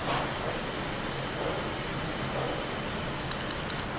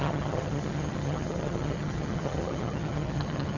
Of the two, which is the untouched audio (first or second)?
first